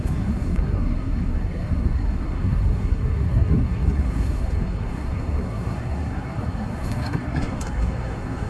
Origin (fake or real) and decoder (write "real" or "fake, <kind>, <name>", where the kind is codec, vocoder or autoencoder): fake, codec, SNAC